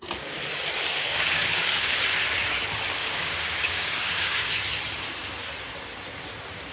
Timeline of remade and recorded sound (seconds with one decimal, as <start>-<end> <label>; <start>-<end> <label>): 0.0-0.9 recorded; 0.9-2.0 remade; 2.0-3.0 recorded; 3.0-4.5 remade; 4.5-6.7 recorded